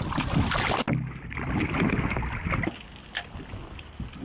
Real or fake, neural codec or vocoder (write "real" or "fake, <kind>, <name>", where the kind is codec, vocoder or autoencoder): real